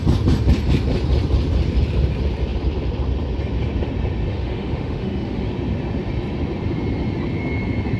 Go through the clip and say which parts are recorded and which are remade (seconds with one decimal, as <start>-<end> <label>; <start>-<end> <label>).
0.0-4.3 recorded; 4.3-5.5 remade; 5.5-8.0 recorded